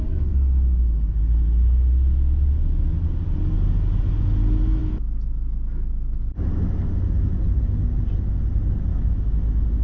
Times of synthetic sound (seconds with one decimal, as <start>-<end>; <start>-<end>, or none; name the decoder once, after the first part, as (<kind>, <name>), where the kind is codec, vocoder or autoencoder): 8.9-9.4 (autoencoder, DAC-VAE)